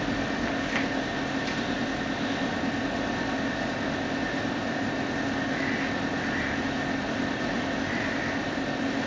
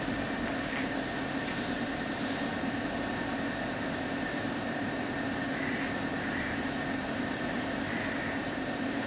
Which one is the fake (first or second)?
second